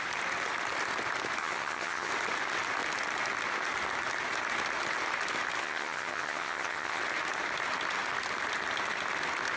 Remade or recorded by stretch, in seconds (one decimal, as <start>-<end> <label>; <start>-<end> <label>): 0.0-1.4 recorded; 1.4-2.1 remade; 2.1-5.6 recorded; 5.6-7.0 remade; 7.0-9.6 recorded